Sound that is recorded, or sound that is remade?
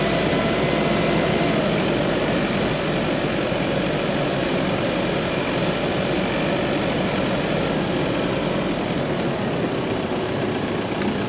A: recorded